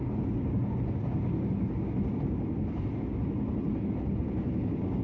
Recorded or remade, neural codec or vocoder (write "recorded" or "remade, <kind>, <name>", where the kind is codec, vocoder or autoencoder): recorded